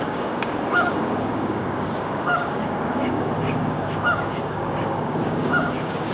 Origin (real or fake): fake